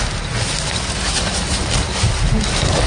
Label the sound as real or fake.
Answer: real